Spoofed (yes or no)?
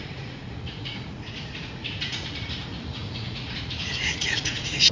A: yes